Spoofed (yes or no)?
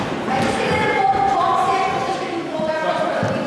no